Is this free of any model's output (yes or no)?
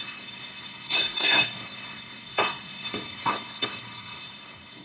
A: no